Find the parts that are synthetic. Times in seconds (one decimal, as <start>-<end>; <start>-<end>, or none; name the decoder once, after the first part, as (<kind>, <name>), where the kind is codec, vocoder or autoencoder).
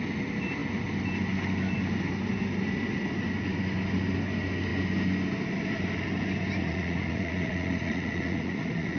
6.6-9.0 (vocoder, Vocos)